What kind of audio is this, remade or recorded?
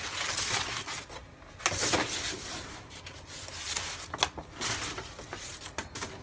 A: recorded